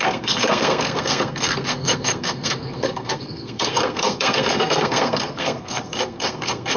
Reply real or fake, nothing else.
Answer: fake